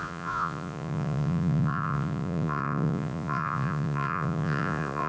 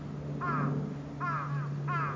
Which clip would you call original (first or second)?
second